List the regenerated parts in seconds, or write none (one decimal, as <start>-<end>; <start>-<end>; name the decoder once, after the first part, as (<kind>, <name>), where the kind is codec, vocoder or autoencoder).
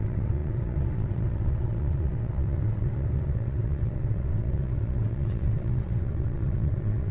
0.0-7.1 (vocoder, WaveNeXt)